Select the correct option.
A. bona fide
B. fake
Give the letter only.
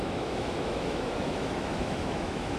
B